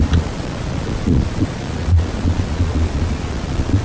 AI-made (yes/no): yes